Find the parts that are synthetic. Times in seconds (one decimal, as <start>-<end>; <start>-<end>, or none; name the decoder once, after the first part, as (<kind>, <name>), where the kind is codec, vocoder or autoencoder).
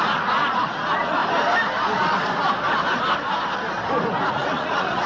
0.0-1.2 (vocoder, Vocos); 4.3-5.1